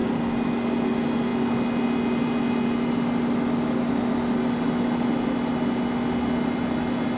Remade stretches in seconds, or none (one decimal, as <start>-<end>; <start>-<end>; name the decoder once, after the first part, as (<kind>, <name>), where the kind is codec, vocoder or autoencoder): none